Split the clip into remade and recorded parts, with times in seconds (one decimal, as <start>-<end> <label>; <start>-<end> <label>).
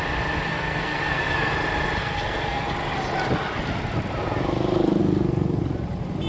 0.0-0.5 recorded; 0.5-1.5 remade; 1.5-2.0 recorded; 2.0-2.7 remade; 2.7-5.0 recorded; 5.0-5.6 remade; 5.6-6.3 recorded